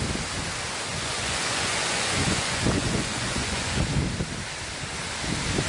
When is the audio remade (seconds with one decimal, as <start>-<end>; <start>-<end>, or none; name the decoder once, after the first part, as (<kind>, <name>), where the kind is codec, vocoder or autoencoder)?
0.9-3.8 (vocoder, Vocos)